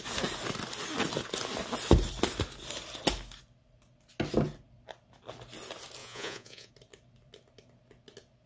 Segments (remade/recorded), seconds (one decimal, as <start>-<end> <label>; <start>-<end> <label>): 0.0-6.0 recorded; 6.0-6.7 remade; 6.7-8.5 recorded